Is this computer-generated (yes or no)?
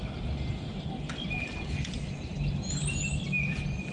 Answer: no